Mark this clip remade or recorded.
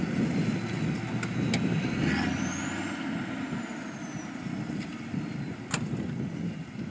recorded